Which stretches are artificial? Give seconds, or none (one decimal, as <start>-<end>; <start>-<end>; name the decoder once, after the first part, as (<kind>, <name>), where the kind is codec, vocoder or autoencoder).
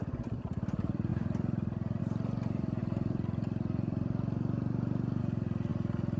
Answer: none